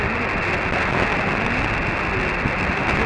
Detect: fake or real real